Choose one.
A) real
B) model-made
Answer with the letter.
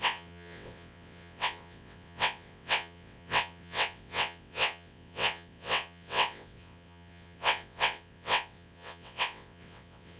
B